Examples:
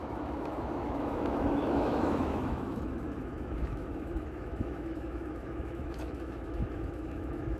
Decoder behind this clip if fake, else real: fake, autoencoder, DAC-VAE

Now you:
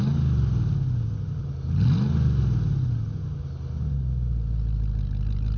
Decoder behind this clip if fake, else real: real